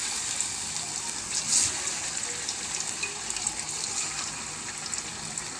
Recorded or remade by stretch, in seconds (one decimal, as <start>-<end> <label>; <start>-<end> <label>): 0.0-5.6 recorded